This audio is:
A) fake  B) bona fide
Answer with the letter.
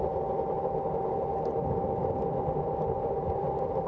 B